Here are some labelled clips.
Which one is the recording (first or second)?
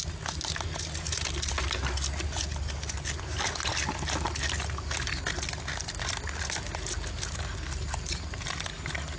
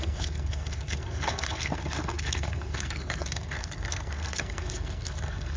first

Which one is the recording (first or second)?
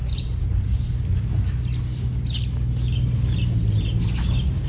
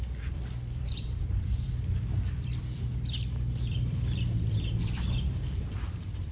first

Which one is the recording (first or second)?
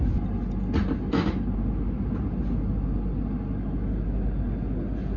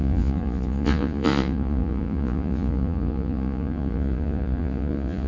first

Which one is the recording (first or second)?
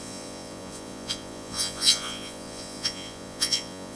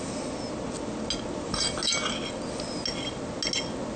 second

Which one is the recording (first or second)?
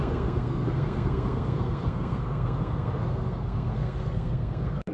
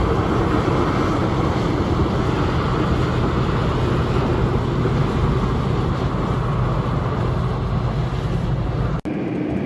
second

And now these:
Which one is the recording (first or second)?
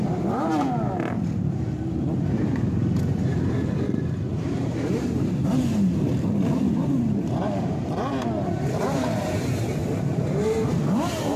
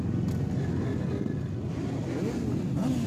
second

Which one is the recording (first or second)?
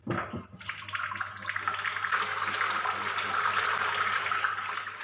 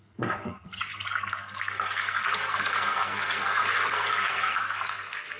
first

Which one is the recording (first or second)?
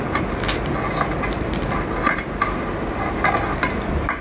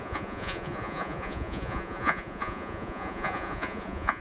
first